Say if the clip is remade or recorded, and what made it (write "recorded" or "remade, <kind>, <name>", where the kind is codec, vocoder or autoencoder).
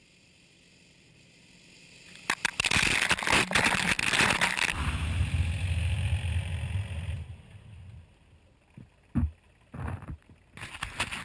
recorded